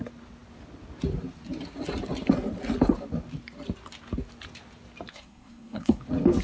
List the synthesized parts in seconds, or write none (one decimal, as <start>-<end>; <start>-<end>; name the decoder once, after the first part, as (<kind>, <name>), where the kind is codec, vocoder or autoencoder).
5.1-6.0 (codec, SNAC)